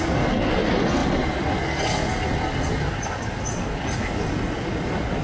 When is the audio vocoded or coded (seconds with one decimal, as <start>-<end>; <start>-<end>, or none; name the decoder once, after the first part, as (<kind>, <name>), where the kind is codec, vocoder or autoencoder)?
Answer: none